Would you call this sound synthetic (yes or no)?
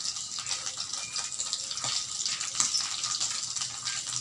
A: no